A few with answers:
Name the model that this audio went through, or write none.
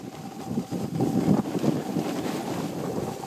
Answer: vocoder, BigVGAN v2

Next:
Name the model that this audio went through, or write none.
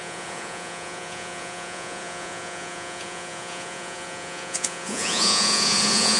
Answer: vocoder, Vocos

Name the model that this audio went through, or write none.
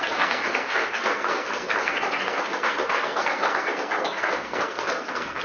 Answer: codec, SNAC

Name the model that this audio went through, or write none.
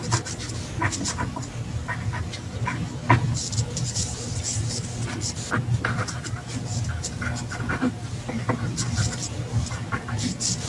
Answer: none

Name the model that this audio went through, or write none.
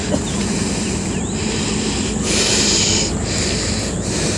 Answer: none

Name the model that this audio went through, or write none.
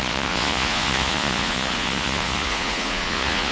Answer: vocoder, Vocos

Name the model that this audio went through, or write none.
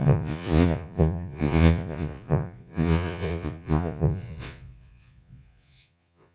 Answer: vocoder, Vocos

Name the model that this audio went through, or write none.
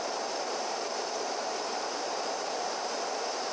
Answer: vocoder, BigVGAN v2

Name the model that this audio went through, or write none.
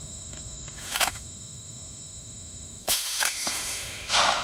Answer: autoencoder, DAC-VAE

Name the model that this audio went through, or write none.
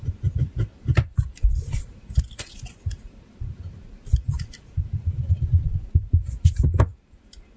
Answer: vocoder, BigVGAN v2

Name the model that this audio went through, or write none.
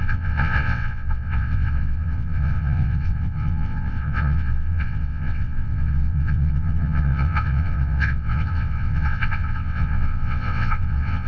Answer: vocoder, WaveNeXt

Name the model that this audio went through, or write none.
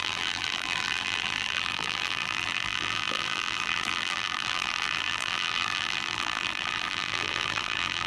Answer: vocoder, BigVGAN v2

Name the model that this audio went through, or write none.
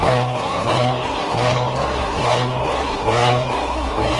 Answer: codec, SNAC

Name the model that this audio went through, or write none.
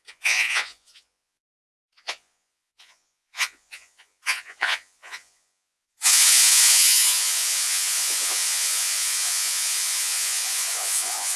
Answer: vocoder, Vocos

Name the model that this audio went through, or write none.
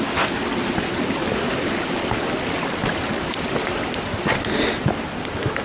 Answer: none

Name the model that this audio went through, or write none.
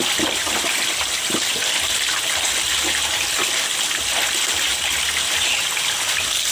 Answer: none